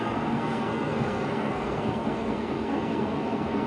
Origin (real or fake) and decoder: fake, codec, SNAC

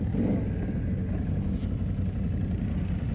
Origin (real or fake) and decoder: real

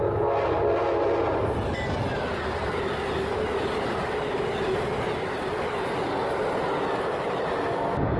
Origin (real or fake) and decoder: real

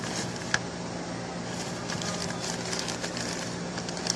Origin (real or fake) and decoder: real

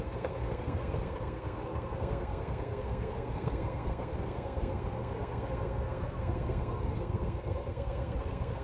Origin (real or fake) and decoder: fake, codec, SNAC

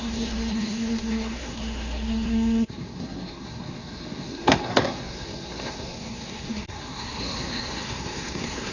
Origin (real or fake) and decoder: fake, codec, SNAC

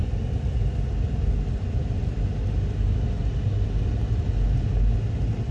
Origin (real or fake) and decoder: real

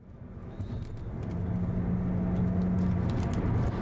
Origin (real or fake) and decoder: real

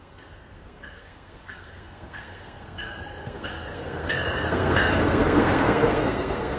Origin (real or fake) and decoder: fake, codec, SNAC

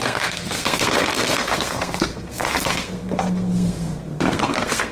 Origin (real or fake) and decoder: fake, codec, SNAC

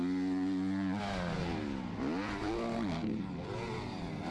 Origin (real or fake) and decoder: real